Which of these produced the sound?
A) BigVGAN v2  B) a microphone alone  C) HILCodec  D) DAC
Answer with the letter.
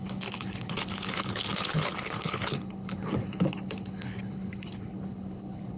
C